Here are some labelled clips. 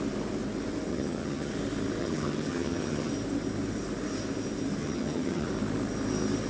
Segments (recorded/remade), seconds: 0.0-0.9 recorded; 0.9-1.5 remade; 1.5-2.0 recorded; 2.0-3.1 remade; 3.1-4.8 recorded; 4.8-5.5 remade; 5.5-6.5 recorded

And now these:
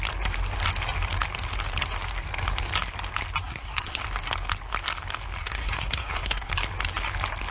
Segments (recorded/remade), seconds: 0.0-3.4 recorded; 3.4-4.0 remade; 4.0-5.4 recorded; 5.4-6.5 remade; 6.5-7.5 recorded

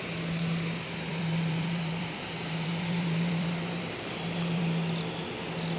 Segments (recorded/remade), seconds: 0.0-1.1 recorded; 1.1-4.6 remade; 4.6-5.8 recorded

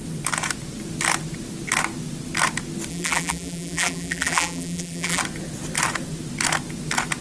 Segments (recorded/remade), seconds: 0.0-2.9 recorded; 2.9-5.2 remade; 5.2-7.2 recorded

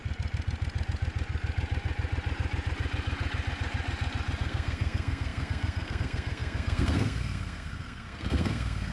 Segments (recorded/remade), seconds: 0.0-4.4 recorded; 4.4-8.9 remade

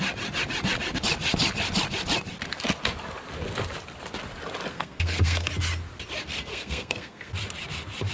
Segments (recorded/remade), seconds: 0.0-4.7 recorded; 4.7-5.5 remade; 5.5-6.5 recorded; 6.5-7.3 remade; 7.3-8.1 recorded

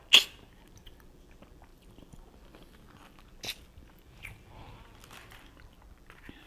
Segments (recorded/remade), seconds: 0.0-6.5 recorded